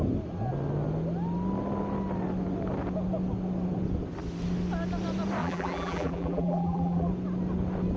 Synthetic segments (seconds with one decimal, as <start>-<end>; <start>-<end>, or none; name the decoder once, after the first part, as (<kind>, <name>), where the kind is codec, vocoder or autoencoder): 5.4-7.1 (vocoder, BigVGAN v2)